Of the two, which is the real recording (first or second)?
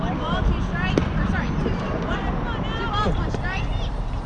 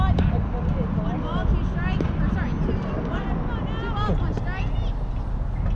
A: second